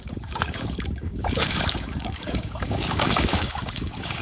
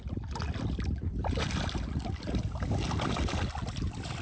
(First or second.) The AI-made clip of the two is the first